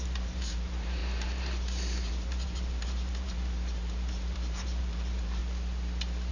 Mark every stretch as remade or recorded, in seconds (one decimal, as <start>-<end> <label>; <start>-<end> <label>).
0.0-5.4 remade; 5.4-6.3 recorded